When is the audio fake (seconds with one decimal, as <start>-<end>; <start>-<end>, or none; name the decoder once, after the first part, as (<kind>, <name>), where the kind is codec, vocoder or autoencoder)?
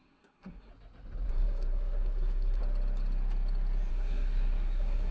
0.0-0.7 (codec, SNAC); 1.3-2.6; 3.9-5.1